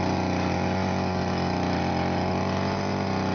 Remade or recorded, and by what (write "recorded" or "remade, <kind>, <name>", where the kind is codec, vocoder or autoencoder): recorded